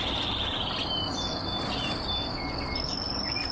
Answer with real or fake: real